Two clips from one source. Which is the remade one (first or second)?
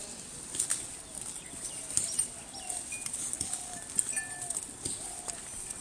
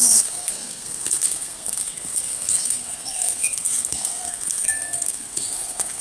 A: second